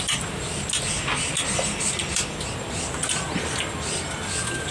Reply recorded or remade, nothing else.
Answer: recorded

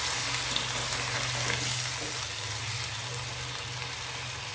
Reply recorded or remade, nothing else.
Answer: recorded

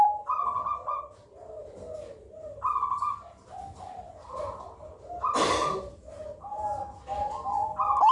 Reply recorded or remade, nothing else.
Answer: recorded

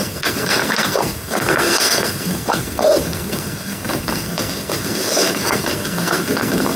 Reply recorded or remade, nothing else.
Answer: remade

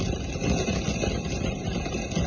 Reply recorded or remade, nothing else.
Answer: recorded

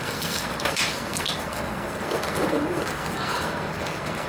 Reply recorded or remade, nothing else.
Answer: remade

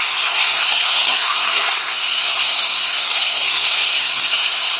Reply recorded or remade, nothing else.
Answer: remade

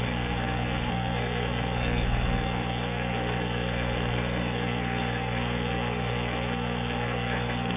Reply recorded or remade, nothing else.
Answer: remade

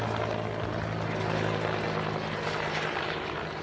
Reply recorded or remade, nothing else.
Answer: recorded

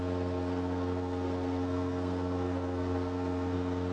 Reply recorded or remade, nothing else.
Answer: remade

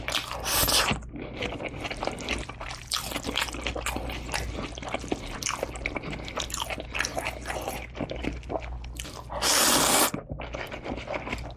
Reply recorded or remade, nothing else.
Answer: recorded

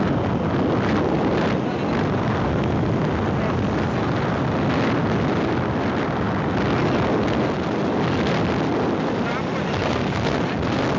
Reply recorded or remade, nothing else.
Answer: recorded